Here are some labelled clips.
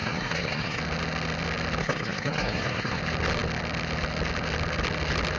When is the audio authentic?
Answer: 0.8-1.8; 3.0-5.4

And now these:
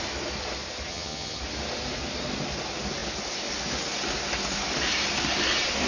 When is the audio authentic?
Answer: 0.0-0.9; 1.4-5.9

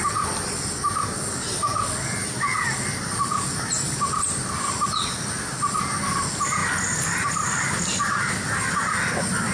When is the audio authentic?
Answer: 0.0-9.5

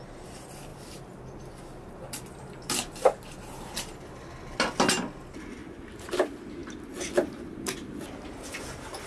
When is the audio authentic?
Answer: 0.0-9.1

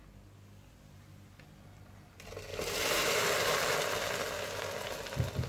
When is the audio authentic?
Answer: 0.0-5.5

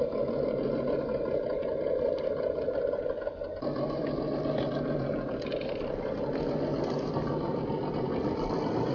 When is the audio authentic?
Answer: 0.0-8.9

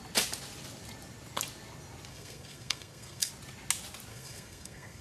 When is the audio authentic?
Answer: 0.0-2.1; 3.3-4.1

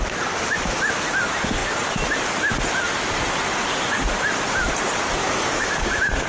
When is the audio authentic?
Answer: 0.0-5.2